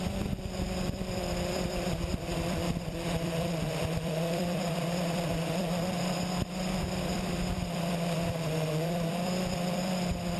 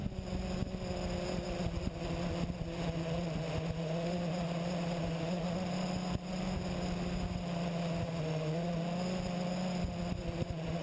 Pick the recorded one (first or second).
second